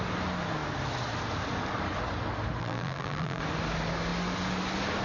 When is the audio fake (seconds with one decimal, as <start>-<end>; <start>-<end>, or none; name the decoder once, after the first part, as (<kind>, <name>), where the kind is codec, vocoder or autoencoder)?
2.6-3.4 (vocoder, BigVGAN v2)